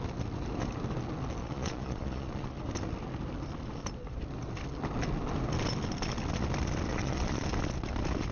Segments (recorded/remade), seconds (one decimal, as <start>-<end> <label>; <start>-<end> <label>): 0.0-1.4 recorded; 1.4-2.6 remade; 2.6-6.9 recorded; 6.9-7.5 remade; 7.5-8.3 recorded